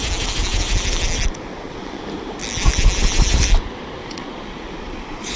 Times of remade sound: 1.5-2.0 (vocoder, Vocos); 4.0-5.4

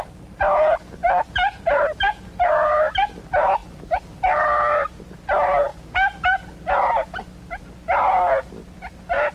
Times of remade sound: 1.0-2.5 (vocoder, BigVGAN v2)

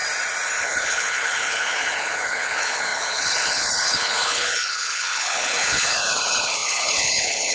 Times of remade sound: 0.6-7.5 (codec, HILCodec)